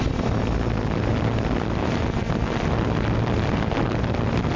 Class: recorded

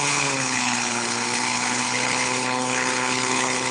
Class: remade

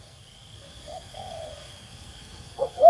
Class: remade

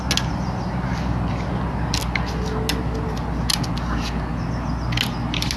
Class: recorded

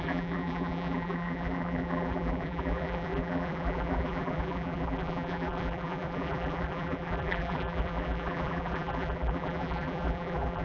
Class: remade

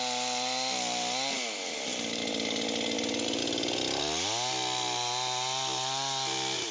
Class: recorded